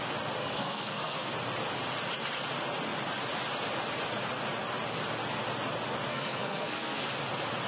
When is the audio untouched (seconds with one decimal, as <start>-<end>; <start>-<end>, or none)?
0.0-0.4; 1.3-6.1; 7.0-7.7